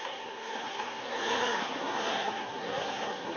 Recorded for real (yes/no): no